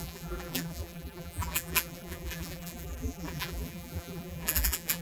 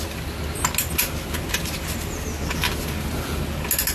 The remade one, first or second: first